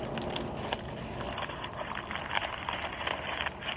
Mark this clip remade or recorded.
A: recorded